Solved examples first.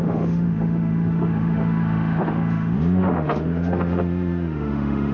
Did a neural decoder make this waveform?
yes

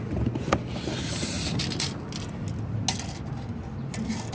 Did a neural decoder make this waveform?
no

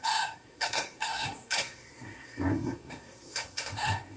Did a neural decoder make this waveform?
yes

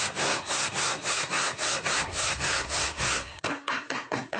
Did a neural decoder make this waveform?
yes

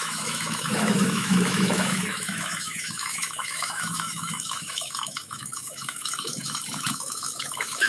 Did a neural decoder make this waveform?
yes